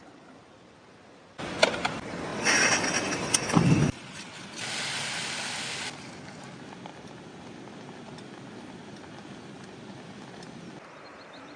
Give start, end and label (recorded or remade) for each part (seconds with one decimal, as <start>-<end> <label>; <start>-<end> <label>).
0.0-11.6 recorded